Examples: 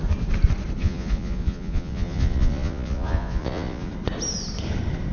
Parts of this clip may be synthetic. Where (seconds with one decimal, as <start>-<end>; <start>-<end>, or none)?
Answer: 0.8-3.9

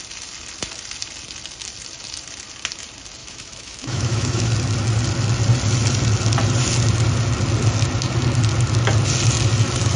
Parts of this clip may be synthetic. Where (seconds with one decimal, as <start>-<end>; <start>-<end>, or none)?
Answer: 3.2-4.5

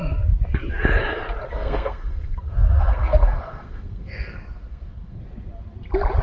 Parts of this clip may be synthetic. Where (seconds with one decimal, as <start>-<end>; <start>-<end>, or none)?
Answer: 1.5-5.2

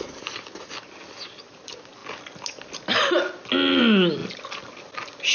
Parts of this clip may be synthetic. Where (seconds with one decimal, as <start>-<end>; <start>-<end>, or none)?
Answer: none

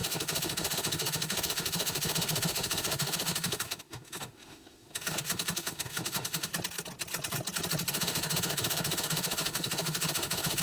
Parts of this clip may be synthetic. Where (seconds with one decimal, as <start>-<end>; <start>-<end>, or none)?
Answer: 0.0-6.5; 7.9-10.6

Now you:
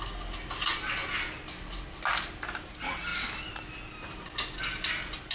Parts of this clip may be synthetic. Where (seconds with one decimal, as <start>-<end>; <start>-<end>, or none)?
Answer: none

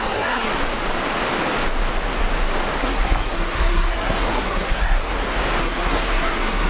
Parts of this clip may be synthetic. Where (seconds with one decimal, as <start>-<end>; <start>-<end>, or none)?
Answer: 0.0-0.5; 2.8-5.1; 5.6-6.7